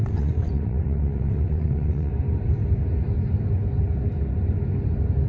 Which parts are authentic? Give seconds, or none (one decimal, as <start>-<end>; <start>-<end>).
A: 2.1-5.3